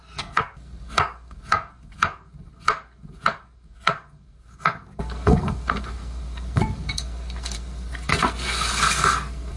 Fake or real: fake